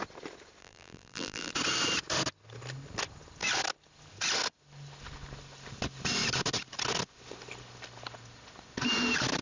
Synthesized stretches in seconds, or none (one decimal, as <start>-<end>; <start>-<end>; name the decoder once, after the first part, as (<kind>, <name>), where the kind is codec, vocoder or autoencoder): 0.6-1.5 (vocoder, BigVGAN v2)